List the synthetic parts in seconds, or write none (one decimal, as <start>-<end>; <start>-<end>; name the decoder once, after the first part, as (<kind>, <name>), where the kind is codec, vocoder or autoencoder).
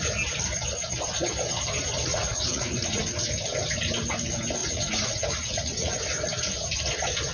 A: 2.1-3.0 (vocoder, Vocos); 4.6-6.0